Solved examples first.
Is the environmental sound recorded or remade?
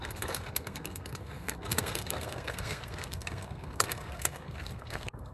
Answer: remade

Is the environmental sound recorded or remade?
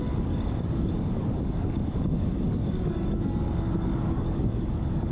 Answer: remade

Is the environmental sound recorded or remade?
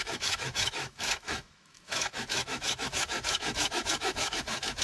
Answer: remade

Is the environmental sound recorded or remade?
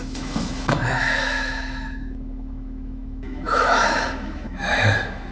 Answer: remade